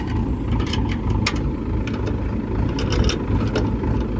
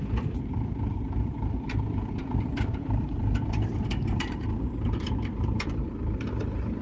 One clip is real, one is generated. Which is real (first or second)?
first